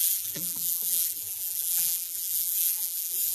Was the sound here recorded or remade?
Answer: remade